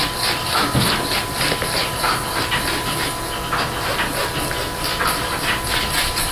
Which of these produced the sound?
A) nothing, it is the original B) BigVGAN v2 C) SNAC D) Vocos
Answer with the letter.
A